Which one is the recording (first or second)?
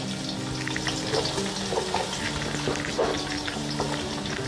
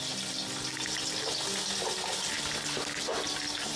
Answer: first